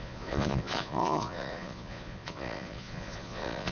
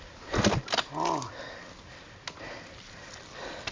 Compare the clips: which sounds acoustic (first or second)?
second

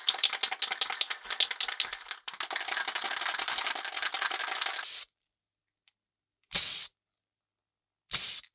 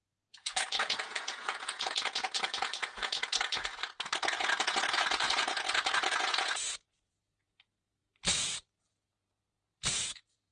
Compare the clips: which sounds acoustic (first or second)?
first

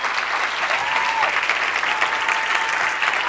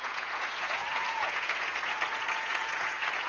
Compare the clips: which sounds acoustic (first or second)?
first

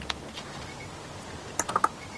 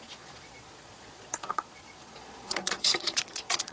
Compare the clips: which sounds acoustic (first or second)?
first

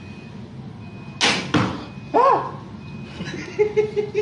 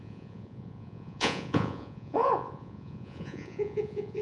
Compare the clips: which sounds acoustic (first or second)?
first